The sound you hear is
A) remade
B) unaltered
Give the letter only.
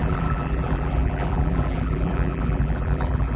A